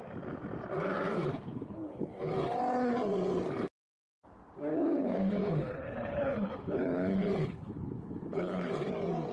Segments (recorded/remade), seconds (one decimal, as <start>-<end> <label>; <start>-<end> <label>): 0.0-1.3 recorded; 1.3-2.3 remade; 2.3-4.7 recorded; 4.7-8.7 remade; 8.7-9.3 recorded